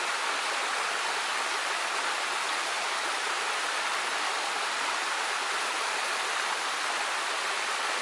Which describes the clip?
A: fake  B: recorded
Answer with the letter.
B